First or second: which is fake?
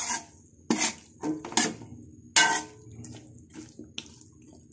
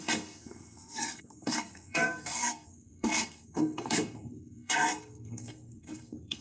second